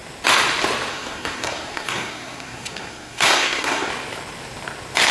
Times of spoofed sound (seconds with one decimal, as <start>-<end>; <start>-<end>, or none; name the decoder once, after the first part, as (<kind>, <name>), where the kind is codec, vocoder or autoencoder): 0.9-3.9 (codec, SNAC)